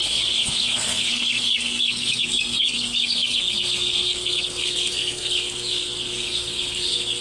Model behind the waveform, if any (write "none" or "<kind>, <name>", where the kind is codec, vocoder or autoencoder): codec, SNAC